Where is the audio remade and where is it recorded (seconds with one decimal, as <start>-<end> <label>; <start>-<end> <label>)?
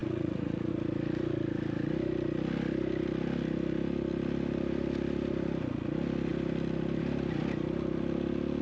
0.0-0.7 remade; 0.7-8.6 recorded